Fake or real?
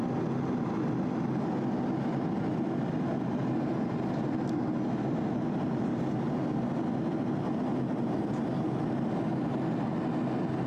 real